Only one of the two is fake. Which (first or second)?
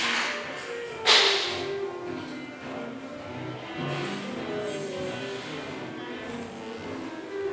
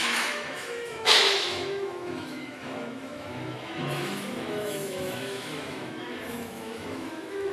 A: second